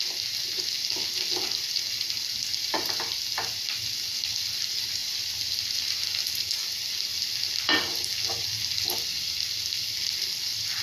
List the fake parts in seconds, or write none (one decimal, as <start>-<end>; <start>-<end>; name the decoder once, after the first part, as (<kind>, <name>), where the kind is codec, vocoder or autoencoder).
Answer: none